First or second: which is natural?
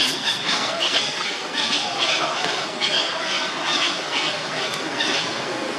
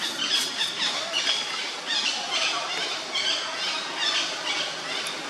second